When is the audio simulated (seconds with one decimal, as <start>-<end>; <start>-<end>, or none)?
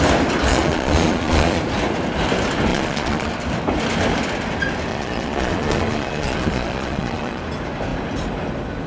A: 0.5-1.6; 2.7-3.3; 4.9-7.4